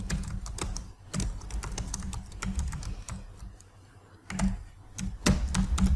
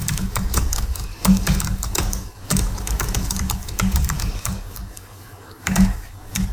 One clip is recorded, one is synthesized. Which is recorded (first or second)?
first